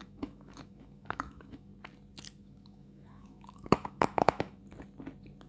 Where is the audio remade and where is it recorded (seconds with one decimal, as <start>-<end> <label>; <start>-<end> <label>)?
0.0-1.7 remade; 1.7-2.4 recorded; 2.4-4.6 remade; 4.6-5.5 recorded